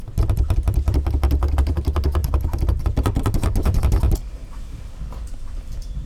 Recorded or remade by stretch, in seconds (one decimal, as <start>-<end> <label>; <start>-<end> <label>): 0.0-2.2 recorded; 2.2-2.8 remade; 2.8-6.1 recorded